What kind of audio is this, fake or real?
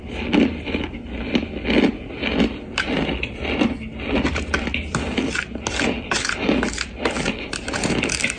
real